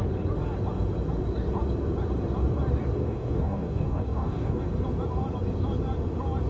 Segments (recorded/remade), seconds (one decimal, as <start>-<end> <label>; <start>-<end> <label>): 0.0-3.0 recorded; 3.0-4.6 remade; 4.6-6.5 recorded